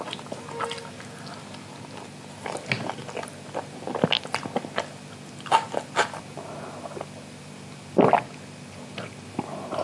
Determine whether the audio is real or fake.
real